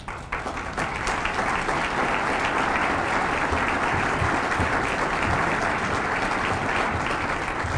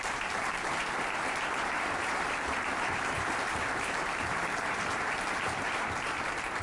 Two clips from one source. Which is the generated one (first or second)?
second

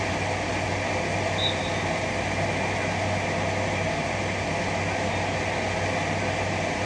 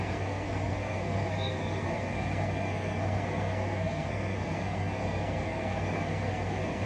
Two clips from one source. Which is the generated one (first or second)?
second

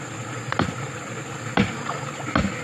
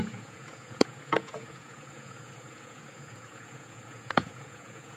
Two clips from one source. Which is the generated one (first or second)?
second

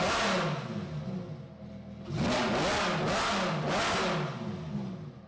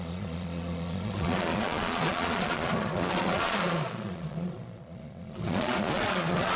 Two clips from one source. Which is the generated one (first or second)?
second